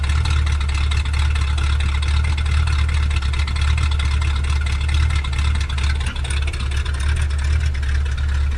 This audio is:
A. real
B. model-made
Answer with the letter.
A